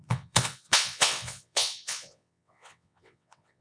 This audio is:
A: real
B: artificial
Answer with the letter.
B